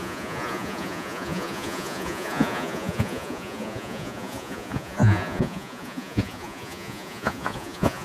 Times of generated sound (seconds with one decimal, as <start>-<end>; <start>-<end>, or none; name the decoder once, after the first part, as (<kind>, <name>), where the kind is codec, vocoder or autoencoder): 0.0-8.0 (vocoder, Vocos)